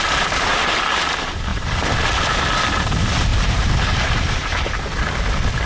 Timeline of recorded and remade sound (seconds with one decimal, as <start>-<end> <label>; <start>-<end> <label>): 0.0-1.5 recorded; 1.5-2.1 remade; 2.1-3.3 recorded; 3.3-4.6 remade; 4.6-5.7 recorded

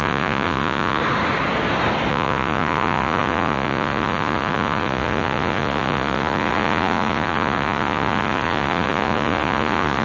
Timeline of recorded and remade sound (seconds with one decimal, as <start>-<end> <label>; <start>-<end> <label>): 0.0-1.0 remade; 1.0-2.1 recorded; 2.1-10.0 remade

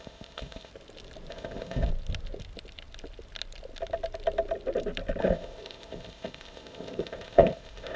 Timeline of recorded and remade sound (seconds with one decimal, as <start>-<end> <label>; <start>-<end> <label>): 0.0-0.7 remade; 0.7-1.3 recorded; 1.3-1.9 remade; 1.9-5.2 recorded; 5.2-8.0 remade

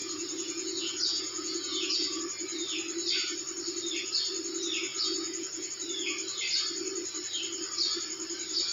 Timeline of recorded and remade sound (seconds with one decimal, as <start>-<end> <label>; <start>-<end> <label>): 0.0-2.2 remade; 2.2-4.9 recorded; 4.9-5.7 remade; 5.7-8.7 recorded

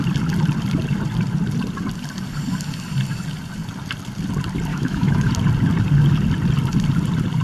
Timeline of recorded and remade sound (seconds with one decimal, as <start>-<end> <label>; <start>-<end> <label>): 0.0-4.7 recorded; 4.7-5.3 remade; 5.3-7.4 recorded

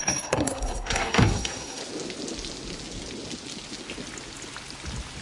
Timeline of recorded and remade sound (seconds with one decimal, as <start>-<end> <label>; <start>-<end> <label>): 0.0-1.8 remade; 1.8-5.2 recorded

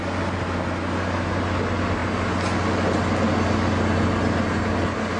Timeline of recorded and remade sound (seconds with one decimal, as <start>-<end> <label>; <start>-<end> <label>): 0.0-5.2 recorded